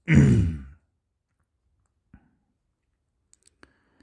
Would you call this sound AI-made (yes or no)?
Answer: no